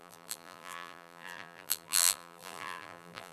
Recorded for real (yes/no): no